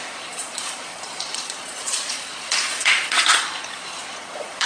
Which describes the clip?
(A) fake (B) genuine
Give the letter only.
A